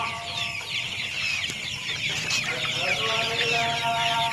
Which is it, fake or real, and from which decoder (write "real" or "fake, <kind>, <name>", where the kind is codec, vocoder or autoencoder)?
fake, vocoder, BigVGAN v2